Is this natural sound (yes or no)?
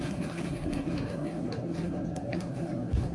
no